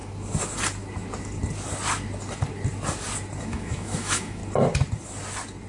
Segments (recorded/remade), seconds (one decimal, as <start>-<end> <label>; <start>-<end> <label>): 0.0-3.4 recorded; 3.4-4.4 remade; 4.4-5.7 recorded